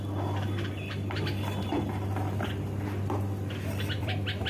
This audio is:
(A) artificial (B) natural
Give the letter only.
A